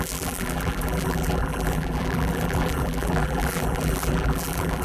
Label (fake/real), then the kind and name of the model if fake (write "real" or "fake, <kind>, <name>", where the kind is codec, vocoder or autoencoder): fake, vocoder, BigVGAN v2